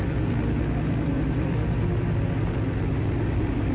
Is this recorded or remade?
remade